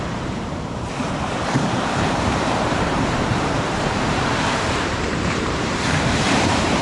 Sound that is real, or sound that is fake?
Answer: fake